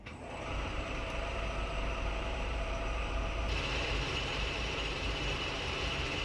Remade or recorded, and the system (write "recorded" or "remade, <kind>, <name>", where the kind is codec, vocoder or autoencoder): remade, vocoder, BigVGAN v2